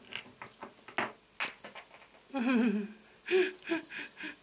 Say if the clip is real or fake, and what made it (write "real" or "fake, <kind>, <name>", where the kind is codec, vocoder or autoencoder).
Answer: real